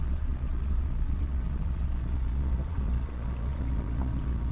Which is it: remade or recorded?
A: remade